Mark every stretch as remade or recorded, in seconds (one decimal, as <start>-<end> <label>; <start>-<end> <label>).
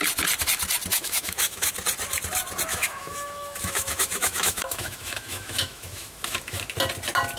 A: 0.0-0.9 recorded; 0.9-1.7 remade; 1.7-2.7 recorded; 2.7-6.6 remade; 6.6-7.4 recorded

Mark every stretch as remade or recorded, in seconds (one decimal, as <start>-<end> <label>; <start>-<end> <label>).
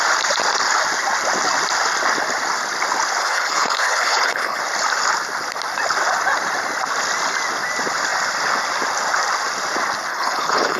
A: 0.0-3.2 recorded; 3.2-4.6 remade; 4.6-10.1 recorded; 10.1-10.8 remade